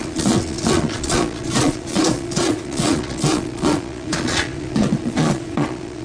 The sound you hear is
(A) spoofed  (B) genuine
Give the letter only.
A